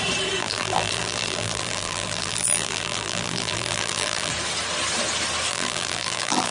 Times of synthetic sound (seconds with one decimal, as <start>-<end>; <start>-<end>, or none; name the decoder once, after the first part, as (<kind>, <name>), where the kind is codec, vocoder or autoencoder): 0.4-4.3 (vocoder, BigVGAN v2); 5.5-6.5